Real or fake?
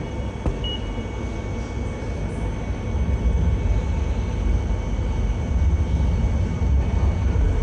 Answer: real